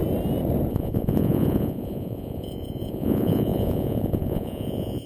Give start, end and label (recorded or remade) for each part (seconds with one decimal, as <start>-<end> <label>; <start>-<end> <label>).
0.0-0.7 recorded; 0.7-5.1 remade